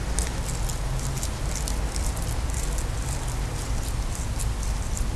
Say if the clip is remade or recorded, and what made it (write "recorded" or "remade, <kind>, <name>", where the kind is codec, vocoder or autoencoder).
recorded